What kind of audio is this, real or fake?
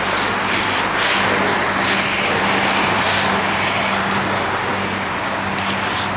real